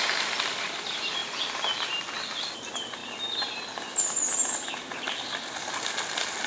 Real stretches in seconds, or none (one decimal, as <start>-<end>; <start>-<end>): 1.2-2.5; 3.0-4.7